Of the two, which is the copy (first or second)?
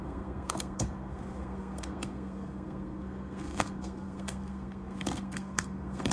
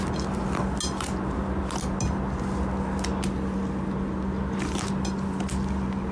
first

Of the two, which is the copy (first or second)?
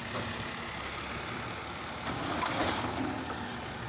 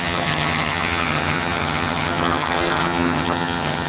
second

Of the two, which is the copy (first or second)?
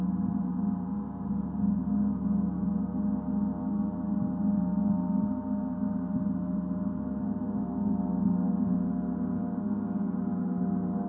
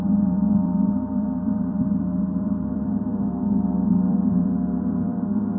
second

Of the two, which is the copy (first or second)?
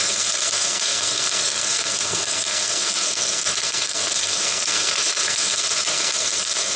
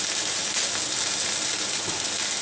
first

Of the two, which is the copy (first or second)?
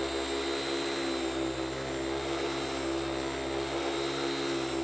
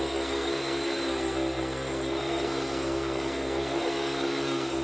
second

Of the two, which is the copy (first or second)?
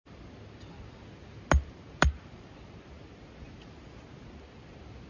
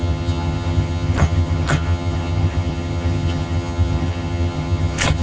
second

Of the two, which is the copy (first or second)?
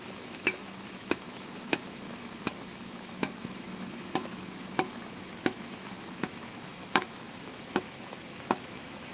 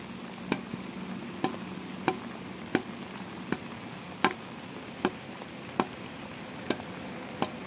first